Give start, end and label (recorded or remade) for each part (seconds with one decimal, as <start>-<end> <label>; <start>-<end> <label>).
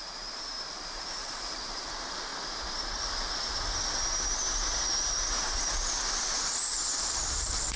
0.0-0.7 recorded; 0.7-2.3 remade; 2.3-7.0 recorded; 7.0-7.8 remade